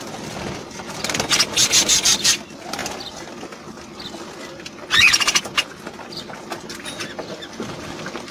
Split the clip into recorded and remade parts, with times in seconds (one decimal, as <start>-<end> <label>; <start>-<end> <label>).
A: 0.0-8.3 recorded